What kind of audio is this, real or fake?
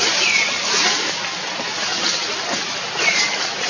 real